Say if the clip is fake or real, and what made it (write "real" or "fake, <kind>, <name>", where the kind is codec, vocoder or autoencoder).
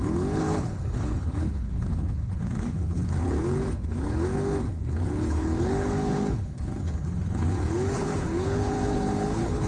fake, codec, HILCodec